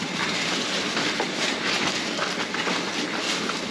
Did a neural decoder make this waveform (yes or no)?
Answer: no